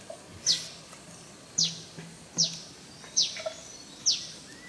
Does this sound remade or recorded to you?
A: recorded